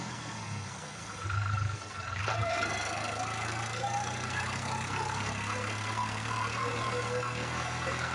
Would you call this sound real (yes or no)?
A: no